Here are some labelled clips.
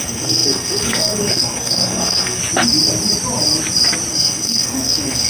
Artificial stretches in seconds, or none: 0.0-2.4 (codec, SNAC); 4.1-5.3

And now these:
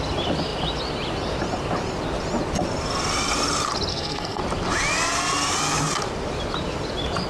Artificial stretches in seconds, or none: 3.9-4.4 (codec, SNAC)